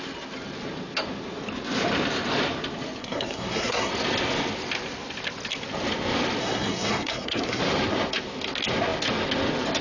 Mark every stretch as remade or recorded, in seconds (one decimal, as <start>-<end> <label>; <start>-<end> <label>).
0.0-3.0 recorded; 3.0-3.9 remade; 3.9-6.4 recorded; 6.4-7.6 remade; 7.6-9.8 recorded